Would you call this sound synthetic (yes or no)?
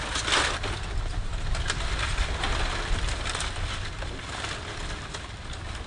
no